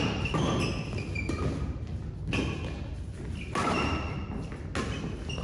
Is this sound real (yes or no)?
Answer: yes